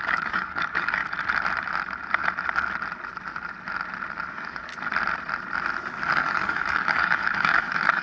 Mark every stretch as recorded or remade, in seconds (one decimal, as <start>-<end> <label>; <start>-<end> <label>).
0.0-1.0 remade; 1.0-4.3 recorded; 4.3-4.7 remade; 4.7-6.1 recorded; 6.1-8.0 remade